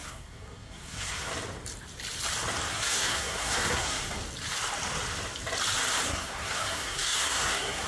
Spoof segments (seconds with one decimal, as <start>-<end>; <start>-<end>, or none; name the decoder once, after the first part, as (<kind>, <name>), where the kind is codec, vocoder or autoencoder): 0.0-1.3 (codec, SNAC); 2.7-4.2; 6.1-7.9